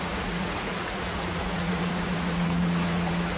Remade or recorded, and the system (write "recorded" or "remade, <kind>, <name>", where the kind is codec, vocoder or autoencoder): remade, vocoder, Vocos